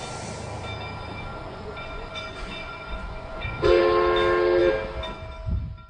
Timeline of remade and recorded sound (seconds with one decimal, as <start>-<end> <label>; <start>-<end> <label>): 0.0-1.3 recorded; 1.3-3.8 remade; 3.8-5.9 recorded